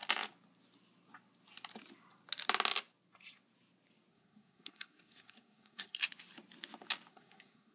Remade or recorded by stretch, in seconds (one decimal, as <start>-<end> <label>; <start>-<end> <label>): 0.0-4.1 recorded; 4.1-6.0 remade; 6.0-7.1 recorded; 7.1-7.7 remade